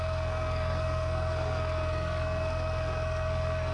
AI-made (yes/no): yes